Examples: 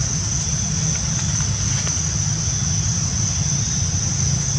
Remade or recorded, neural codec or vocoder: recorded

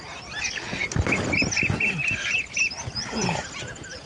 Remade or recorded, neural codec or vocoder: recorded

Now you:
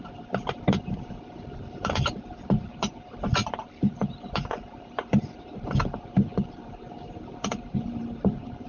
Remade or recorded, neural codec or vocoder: remade, vocoder, BigVGAN v2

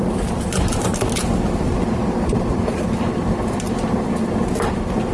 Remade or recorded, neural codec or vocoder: recorded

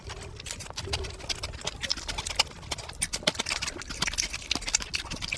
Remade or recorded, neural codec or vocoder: recorded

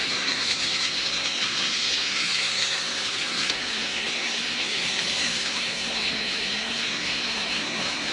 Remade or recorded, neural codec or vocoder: remade, codec, SNAC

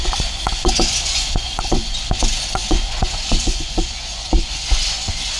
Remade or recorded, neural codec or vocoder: remade, vocoder, Vocos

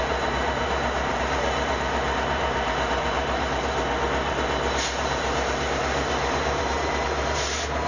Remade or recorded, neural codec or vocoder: remade, vocoder, BigVGAN v2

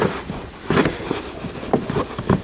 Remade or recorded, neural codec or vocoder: recorded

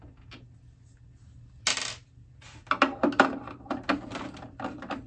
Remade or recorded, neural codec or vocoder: recorded